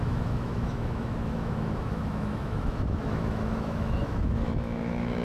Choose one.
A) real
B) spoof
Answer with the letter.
B